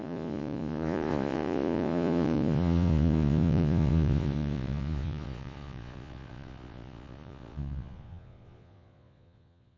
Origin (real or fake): fake